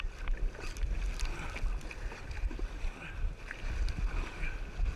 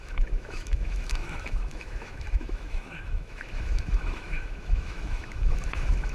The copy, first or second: second